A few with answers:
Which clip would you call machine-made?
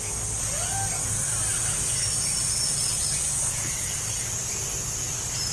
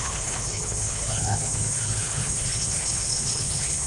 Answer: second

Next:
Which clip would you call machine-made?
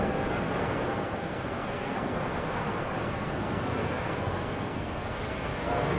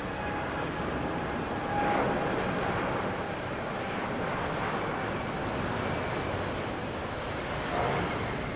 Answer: first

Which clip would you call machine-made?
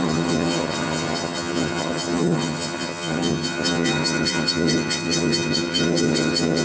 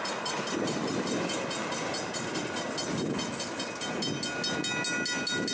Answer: first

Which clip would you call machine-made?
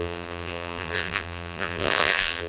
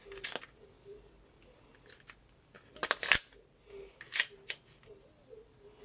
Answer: first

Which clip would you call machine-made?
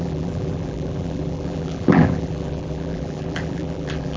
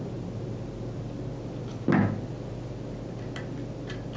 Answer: first